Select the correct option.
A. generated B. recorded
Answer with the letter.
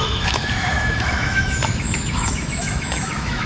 A